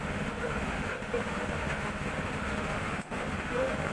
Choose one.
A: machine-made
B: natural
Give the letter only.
A